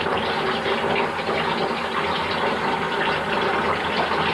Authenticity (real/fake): real